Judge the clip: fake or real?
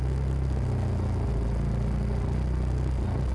real